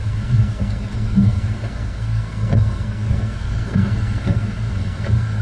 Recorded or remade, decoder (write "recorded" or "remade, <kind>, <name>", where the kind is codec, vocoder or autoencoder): remade, codec, SNAC